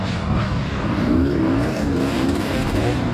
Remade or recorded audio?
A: remade